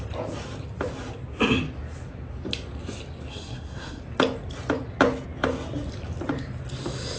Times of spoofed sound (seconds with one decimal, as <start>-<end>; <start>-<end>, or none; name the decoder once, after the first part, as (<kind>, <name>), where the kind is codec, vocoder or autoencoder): 3.3-4.0 (codec, SNAC)